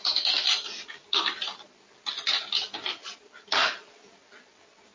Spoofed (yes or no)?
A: no